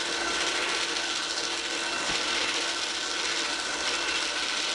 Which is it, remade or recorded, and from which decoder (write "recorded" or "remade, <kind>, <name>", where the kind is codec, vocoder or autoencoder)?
recorded